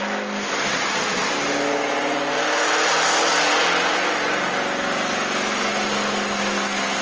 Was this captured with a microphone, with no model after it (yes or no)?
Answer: yes